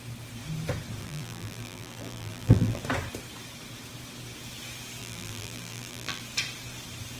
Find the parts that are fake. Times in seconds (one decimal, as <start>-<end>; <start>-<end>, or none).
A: 1.0-2.8; 5.0-6.2